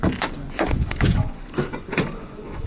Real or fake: fake